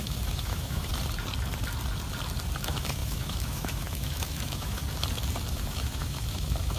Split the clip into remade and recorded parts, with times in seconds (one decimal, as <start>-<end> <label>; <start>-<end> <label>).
0.0-0.9 remade; 0.9-2.6 recorded; 2.6-4.8 remade; 4.8-5.5 recorded; 5.5-6.8 remade